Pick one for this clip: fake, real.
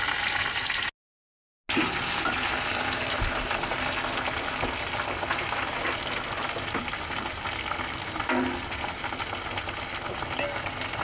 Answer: real